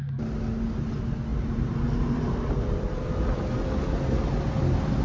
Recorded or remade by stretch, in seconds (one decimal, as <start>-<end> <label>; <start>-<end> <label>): 0.0-1.3 recorded; 1.3-4.3 remade; 4.3-5.0 recorded